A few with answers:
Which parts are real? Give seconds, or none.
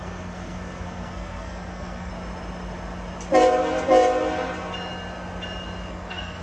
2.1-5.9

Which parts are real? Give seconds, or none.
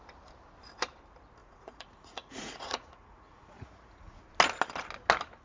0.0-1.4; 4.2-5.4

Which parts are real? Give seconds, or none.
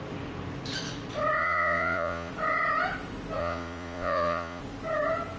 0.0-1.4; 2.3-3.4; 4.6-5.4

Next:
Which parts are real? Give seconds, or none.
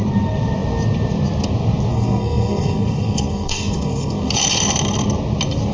0.0-1.9; 4.3-5.7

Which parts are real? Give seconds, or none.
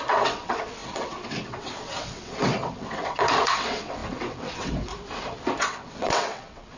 4.9-5.6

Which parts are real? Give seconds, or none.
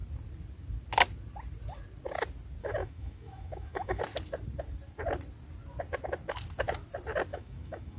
0.0-2.6; 4.0-7.3